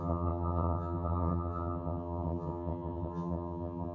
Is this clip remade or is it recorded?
remade